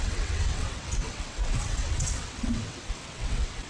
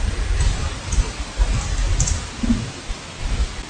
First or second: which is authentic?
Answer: second